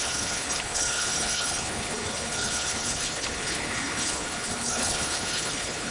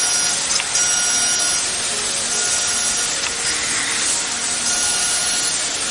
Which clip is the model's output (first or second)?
first